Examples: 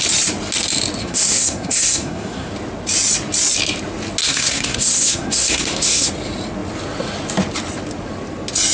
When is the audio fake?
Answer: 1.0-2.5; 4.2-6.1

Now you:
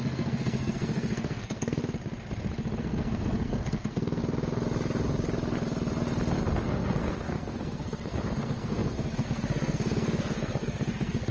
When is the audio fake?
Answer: 0.0-1.8; 2.8-4.2; 6.5-11.3

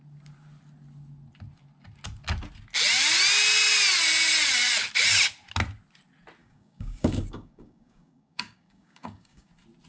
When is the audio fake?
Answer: 6.4-9.5

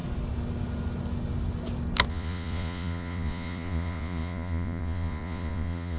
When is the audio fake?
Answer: 2.1-6.0

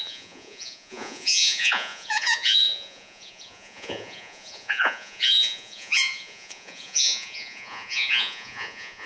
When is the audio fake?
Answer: 0.0-9.1

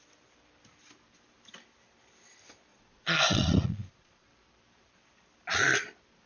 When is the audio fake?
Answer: 2.7-4.3

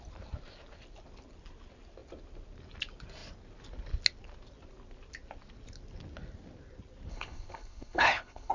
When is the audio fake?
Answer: 7.1-8.5

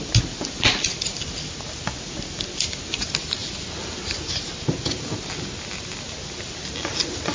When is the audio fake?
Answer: none